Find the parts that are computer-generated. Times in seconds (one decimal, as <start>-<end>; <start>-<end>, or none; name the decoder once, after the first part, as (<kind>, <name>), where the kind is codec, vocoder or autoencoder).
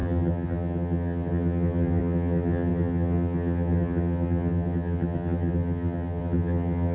0.0-6.9 (vocoder, HiFi-GAN)